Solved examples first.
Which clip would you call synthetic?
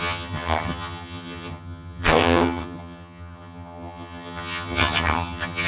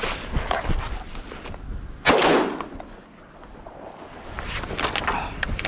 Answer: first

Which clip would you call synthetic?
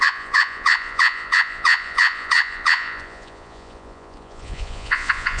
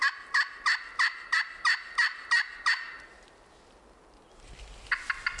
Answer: first